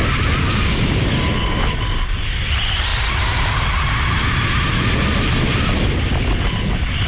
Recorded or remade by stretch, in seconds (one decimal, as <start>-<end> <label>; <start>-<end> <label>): 0.0-7.1 recorded